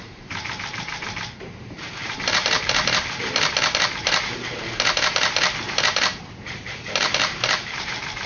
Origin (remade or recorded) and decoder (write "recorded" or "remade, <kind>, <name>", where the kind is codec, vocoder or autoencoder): remade, vocoder, BigVGAN v2